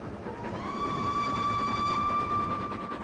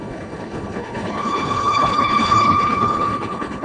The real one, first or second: first